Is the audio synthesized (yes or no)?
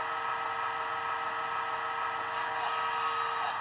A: no